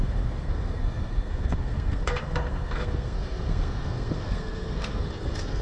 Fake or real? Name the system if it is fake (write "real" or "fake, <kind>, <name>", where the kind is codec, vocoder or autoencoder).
fake, codec, SNAC